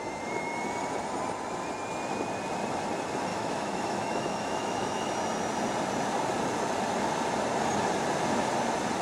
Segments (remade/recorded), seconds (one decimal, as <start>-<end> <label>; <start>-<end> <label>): 0.0-3.3 recorded; 3.3-5.1 remade; 5.1-9.0 recorded